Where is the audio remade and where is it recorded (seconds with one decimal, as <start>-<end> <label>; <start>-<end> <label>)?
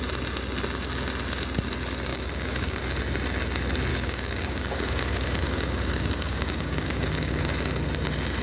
0.0-2.1 recorded; 2.1-3.0 remade; 3.0-3.9 recorded; 3.9-7.4 remade; 7.4-8.4 recorded